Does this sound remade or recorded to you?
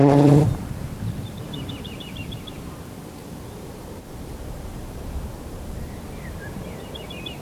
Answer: remade